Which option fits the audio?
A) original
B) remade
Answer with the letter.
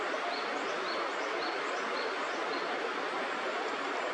A